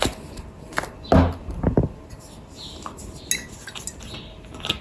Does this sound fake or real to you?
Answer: real